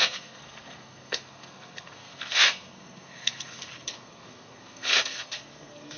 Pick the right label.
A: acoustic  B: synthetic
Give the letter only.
B